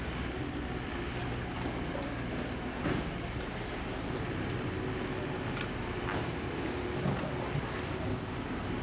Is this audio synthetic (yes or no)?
no